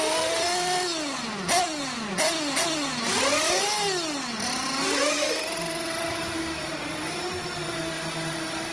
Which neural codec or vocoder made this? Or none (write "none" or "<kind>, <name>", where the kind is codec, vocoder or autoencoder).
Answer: none